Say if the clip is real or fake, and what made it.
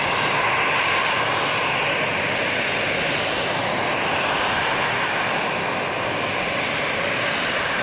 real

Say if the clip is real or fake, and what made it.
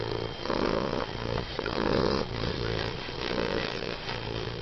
fake, vocoder, Vocos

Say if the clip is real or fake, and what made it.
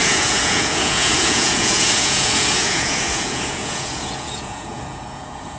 fake, vocoder, Vocos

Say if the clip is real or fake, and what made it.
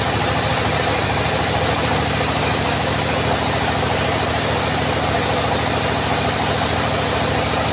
real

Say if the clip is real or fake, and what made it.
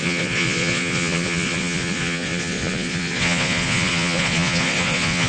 fake, vocoder, Vocos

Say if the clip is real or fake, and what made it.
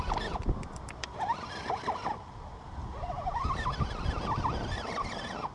real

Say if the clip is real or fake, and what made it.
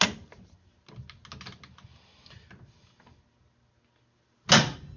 real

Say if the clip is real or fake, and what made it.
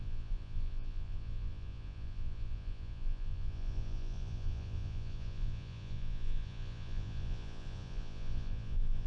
fake, vocoder, Vocos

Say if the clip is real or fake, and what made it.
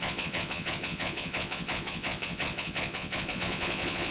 fake, vocoder, Vocos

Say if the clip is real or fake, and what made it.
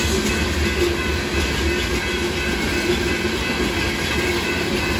real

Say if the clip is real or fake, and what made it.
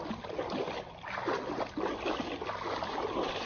real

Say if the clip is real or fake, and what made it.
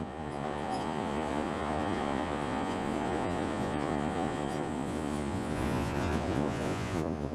fake, vocoder, Vocos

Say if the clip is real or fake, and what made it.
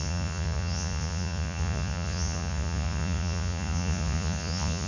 fake, vocoder, Vocos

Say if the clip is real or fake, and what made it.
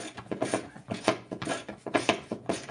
fake, vocoder, Vocos